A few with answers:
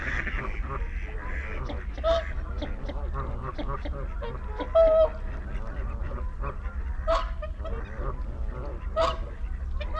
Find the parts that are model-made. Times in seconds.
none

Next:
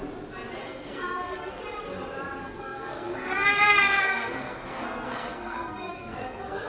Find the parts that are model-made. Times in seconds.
0.6-1.6; 2.4-6.7

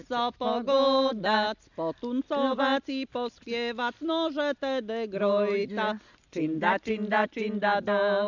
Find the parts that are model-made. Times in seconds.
none

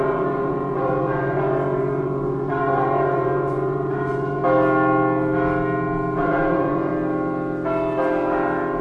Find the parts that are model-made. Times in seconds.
0.0-4.4; 6.2-6.9

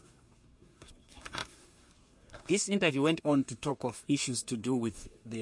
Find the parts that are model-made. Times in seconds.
0.0-5.4

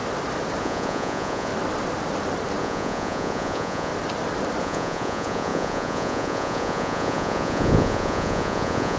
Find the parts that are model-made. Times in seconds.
0.6-1.5; 2.6-3.9; 4.6-9.0